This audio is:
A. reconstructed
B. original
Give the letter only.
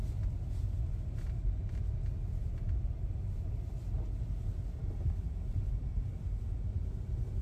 B